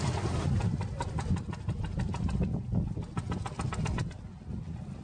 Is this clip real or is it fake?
real